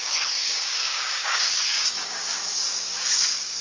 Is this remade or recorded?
remade